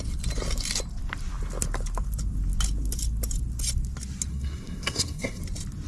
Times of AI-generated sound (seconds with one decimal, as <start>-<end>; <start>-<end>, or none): 4.3-5.4